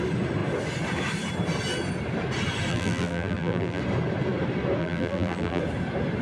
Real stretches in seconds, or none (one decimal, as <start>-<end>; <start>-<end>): 0.0-2.7; 3.8-4.8; 5.6-6.2